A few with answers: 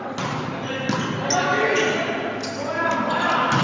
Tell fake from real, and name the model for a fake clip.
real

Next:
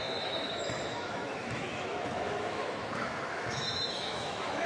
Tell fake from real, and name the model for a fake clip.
fake, autoencoder, DAC-VAE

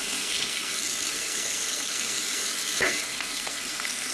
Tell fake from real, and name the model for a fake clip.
fake, codec, SNAC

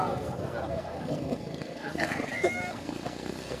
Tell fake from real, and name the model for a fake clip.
fake, codec, SNAC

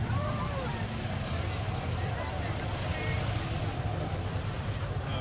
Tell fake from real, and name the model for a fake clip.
real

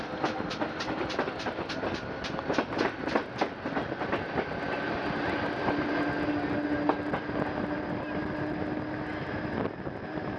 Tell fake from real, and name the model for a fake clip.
real